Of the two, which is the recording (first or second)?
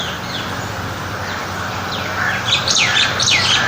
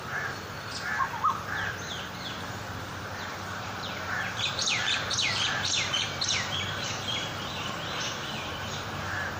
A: first